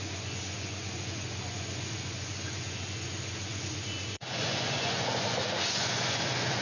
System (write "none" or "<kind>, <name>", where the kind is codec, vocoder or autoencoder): vocoder, Vocos